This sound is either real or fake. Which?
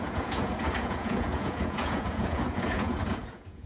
fake